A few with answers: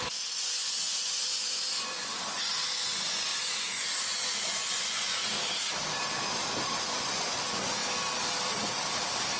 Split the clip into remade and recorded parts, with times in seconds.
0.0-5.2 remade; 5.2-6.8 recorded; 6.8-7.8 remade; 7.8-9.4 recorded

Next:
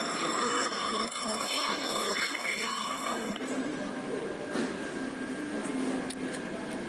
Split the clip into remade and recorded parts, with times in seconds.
0.0-0.4 recorded; 0.4-3.4 remade; 3.4-6.9 recorded

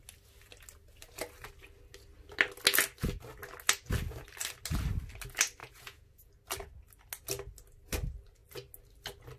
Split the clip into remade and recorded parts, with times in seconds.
0.0-5.6 recorded; 5.6-6.3 remade; 6.3-9.4 recorded

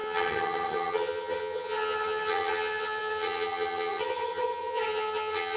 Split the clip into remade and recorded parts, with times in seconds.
0.0-5.6 remade

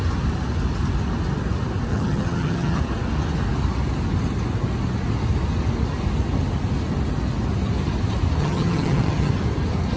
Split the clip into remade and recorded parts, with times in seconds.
0.0-1.9 recorded; 1.9-2.8 remade; 2.8-8.4 recorded; 8.4-9.3 remade; 9.3-10.0 recorded

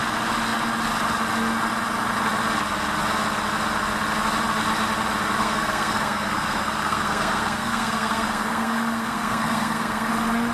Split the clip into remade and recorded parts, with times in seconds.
0.0-5.4 recorded; 5.4-10.1 remade; 10.1-10.5 recorded

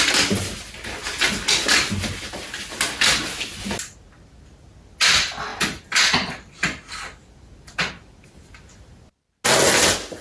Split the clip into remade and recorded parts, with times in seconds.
0.0-10.2 recorded

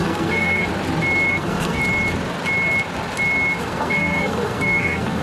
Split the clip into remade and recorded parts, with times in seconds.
0.0-0.7 remade; 0.7-1.3 recorded; 1.3-1.8 remade; 1.8-3.6 recorded; 3.6-5.2 remade